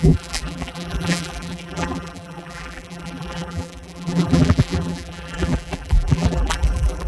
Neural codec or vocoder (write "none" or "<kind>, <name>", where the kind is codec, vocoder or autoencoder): vocoder, BigVGAN v2